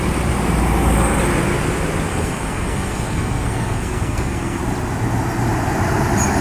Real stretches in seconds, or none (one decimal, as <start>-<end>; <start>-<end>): 0.0-2.1; 4.6-6.4